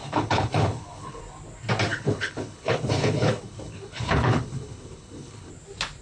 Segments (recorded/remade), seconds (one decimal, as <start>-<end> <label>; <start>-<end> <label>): 0.0-1.2 remade; 1.2-1.9 recorded; 1.9-5.5 remade; 5.5-6.0 recorded